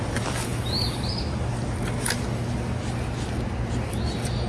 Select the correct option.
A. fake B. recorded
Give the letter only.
B